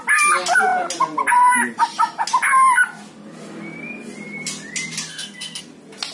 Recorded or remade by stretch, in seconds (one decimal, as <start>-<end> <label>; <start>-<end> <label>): 0.0-5.1 recorded; 5.1-5.6 remade; 5.6-6.1 recorded